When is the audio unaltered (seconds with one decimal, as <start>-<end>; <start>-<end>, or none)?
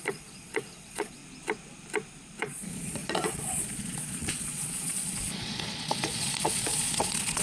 1.2-2.4